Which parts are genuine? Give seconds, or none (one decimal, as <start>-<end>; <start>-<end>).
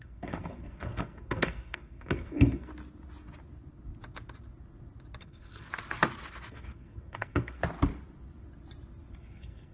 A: 2.7-5.2; 5.7-6.5; 7.6-9.2